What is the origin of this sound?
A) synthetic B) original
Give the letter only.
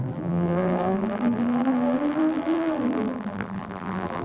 A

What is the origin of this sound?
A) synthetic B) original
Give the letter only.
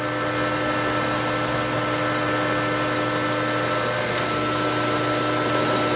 B